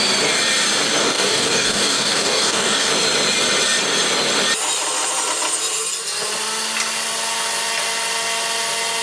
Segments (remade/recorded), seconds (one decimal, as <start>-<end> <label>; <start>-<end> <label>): 0.0-1.0 recorded; 1.0-2.9 remade; 2.9-9.0 recorded